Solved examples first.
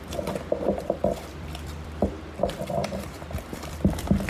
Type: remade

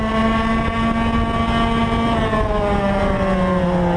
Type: recorded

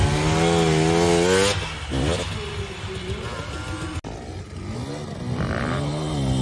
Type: recorded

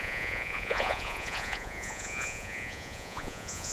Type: remade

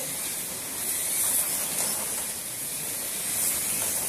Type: recorded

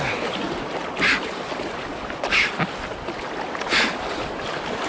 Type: recorded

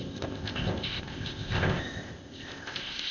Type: remade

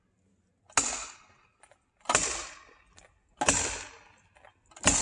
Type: recorded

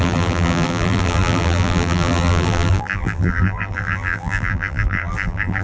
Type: remade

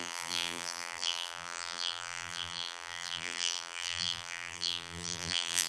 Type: remade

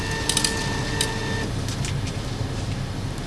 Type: recorded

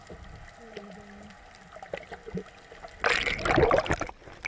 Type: recorded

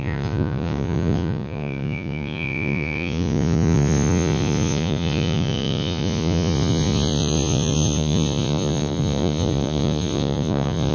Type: remade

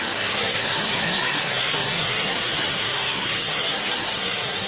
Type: remade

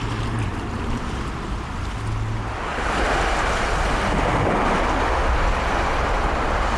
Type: recorded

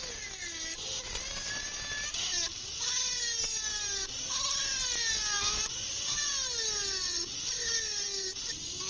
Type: recorded